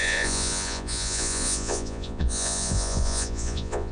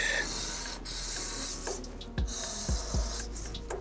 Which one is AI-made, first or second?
first